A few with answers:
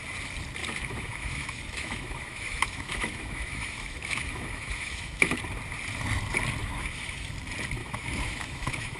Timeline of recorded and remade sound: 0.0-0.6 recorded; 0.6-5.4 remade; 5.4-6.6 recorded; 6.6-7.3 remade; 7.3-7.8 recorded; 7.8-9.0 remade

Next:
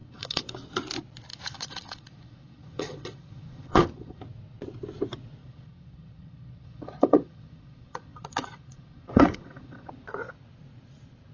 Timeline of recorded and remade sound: 0.0-0.5 remade; 0.5-1.3 recorded; 1.3-4.2 remade; 4.2-5.4 recorded; 5.4-9.9 remade; 9.9-11.3 recorded

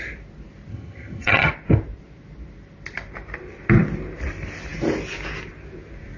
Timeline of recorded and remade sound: 0.0-0.7 recorded; 0.7-1.5 remade; 1.5-6.2 recorded

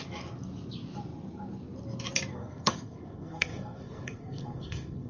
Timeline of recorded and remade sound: 0.0-2.3 recorded; 2.3-5.1 remade

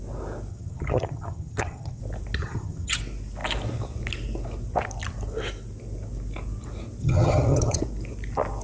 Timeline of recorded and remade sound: 0.0-0.5 recorded; 0.5-2.0 remade; 2.0-2.4 recorded; 2.4-3.0 remade; 3.0-7.0 recorded; 7.0-7.8 remade; 7.8-8.6 recorded

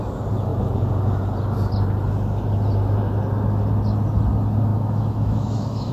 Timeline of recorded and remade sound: 0.0-4.7 recorded; 4.7-5.9 remade

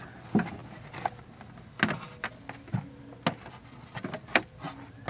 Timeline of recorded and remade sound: 0.0-5.1 recorded